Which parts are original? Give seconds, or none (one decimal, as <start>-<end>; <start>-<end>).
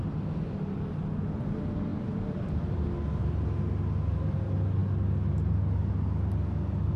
0.0-1.9; 3.2-7.0